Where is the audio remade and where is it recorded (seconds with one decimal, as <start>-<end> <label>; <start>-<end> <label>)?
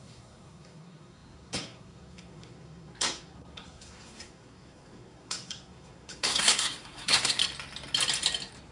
0.0-7.4 remade; 7.4-8.7 recorded